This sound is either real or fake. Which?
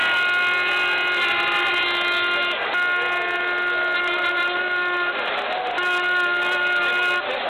real